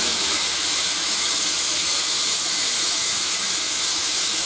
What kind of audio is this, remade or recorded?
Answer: remade